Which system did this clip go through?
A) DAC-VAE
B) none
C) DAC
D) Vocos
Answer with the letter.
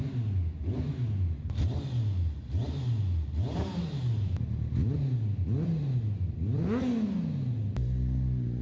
B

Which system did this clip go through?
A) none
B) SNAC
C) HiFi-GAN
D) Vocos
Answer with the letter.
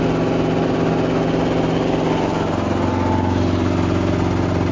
A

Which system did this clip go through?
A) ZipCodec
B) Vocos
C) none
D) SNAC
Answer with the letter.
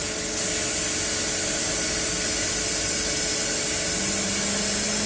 C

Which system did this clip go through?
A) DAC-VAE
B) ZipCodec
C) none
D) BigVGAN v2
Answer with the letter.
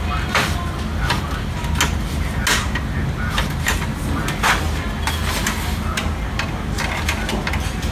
C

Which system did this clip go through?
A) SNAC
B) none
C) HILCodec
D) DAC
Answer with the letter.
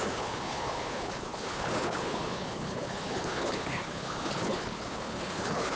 C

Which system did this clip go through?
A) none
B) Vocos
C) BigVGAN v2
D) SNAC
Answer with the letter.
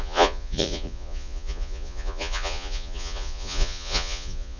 B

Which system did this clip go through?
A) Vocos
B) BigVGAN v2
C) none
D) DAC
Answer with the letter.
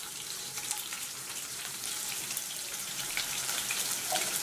B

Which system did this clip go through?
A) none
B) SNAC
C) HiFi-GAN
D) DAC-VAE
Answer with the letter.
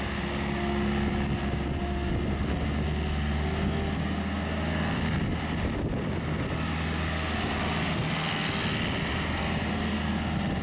A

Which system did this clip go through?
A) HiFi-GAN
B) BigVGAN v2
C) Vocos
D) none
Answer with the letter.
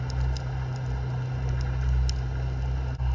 D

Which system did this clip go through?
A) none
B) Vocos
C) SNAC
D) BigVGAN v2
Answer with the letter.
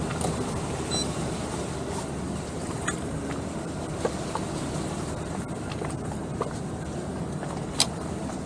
A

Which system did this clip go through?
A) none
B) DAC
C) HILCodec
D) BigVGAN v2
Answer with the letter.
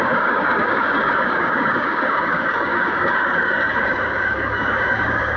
B